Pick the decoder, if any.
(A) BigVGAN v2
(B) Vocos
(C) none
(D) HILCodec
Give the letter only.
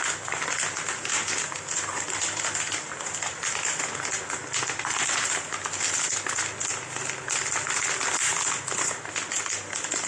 C